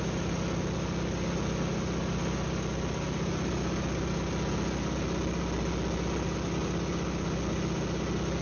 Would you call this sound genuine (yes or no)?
yes